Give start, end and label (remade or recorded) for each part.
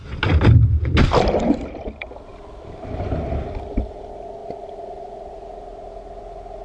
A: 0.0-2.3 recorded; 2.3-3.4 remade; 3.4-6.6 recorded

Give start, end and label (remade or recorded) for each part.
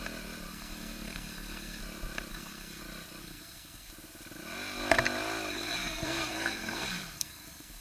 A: 0.0-0.5 recorded; 0.5-1.8 remade; 1.8-2.3 recorded; 2.3-2.8 remade; 2.8-3.2 recorded; 3.2-3.9 remade; 3.9-5.5 recorded; 5.5-7.8 remade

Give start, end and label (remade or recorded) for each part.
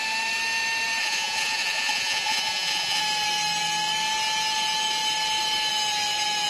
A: 0.0-1.0 recorded; 1.0-3.0 remade; 3.0-6.5 recorded